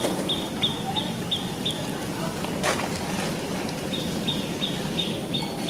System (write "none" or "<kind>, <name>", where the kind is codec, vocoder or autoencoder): none